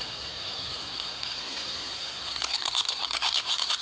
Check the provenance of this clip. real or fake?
fake